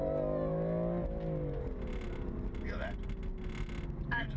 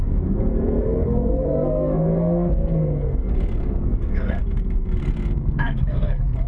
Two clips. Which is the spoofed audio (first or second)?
second